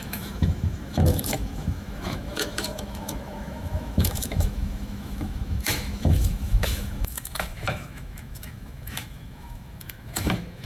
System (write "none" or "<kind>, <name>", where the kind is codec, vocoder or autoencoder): autoencoder, DAC-VAE